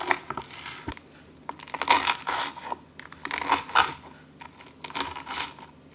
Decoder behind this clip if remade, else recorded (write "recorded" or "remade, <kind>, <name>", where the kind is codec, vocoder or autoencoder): recorded